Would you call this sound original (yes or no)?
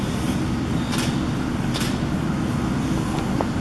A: yes